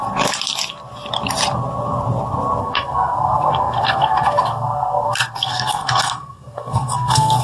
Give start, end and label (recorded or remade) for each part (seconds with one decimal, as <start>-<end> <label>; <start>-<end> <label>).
0.0-2.6 recorded; 2.6-7.4 remade